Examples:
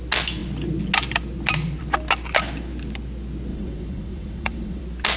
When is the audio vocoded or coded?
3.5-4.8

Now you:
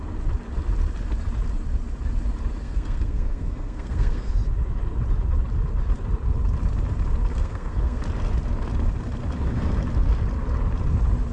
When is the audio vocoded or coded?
2.6-4.3; 7.3-8.0

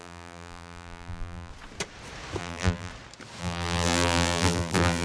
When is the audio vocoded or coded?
0.0-1.5; 2.4-2.9; 3.4-5.0